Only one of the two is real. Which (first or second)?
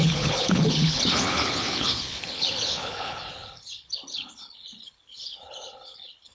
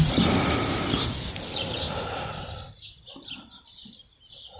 second